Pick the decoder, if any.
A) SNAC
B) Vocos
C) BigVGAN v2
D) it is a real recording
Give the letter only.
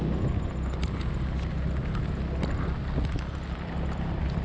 D